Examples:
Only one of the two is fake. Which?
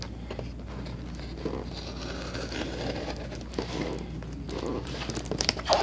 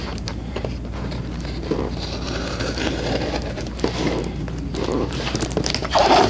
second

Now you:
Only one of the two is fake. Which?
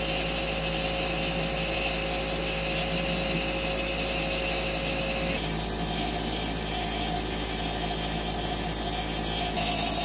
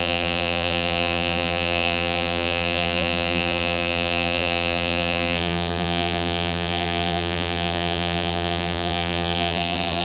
second